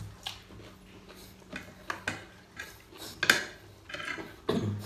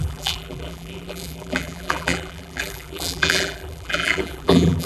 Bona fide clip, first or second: first